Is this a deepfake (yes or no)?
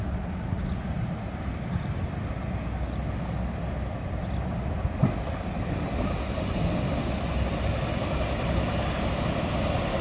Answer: no